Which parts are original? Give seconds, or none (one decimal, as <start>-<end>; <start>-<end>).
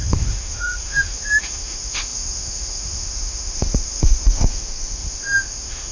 none